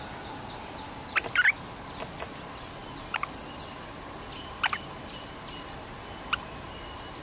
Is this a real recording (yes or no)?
yes